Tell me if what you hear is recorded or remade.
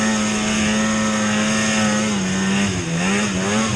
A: recorded